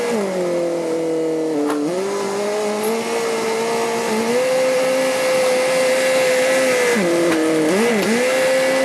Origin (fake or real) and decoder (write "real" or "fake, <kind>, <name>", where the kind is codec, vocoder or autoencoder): real